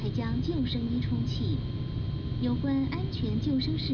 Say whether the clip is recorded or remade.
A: recorded